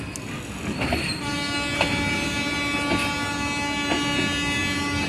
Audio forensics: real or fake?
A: real